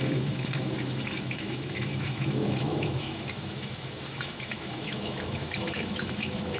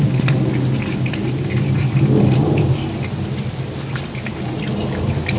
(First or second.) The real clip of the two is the second